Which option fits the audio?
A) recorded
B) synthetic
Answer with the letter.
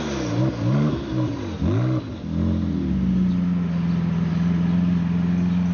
A